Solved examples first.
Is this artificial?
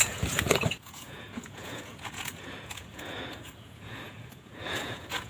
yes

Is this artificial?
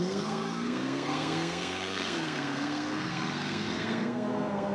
yes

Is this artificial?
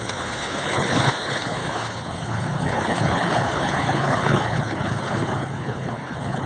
yes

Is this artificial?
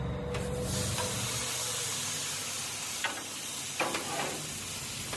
no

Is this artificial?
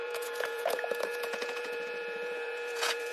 yes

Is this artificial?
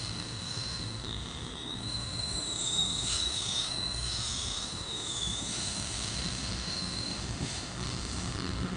yes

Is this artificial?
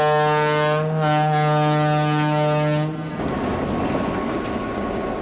no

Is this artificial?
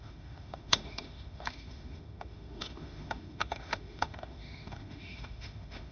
yes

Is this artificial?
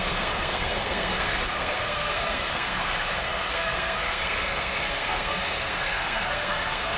yes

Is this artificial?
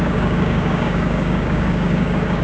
yes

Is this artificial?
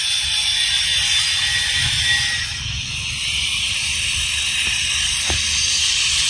no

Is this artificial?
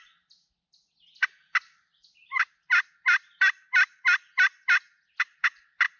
yes